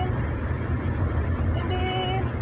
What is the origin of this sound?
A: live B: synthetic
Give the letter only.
A